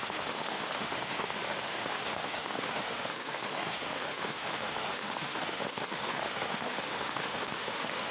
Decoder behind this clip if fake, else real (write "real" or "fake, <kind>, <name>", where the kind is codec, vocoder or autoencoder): fake, autoencoder, DAC-VAE